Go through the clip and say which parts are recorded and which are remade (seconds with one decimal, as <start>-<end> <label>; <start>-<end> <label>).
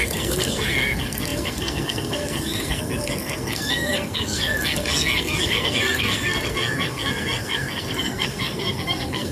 0.0-9.3 remade